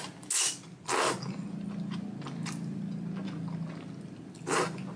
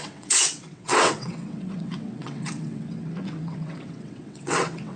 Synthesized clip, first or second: second